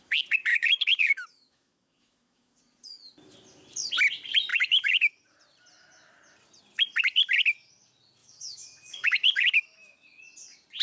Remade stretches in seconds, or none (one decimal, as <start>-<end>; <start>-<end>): 0.5-2.6; 4.5-5.1; 8.2-10.2